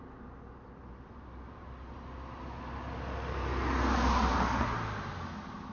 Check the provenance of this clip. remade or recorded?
recorded